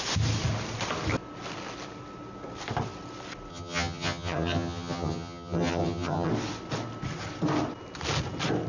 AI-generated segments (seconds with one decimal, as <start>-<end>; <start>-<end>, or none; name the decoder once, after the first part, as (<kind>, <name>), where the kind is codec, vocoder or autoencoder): 3.5-6.3 (vocoder, HiFi-GAN)